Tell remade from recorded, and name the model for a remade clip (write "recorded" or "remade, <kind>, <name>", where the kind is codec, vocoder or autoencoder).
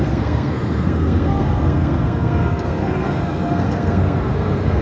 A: remade, codec, SNAC